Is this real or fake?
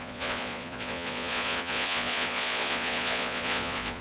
fake